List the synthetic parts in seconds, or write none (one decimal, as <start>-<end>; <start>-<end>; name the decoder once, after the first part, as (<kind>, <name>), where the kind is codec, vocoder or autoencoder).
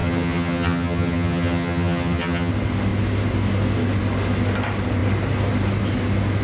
0.0-2.5 (vocoder, HiFi-GAN)